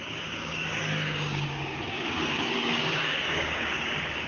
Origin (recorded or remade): remade